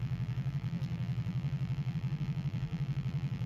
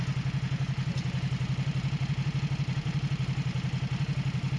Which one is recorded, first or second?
second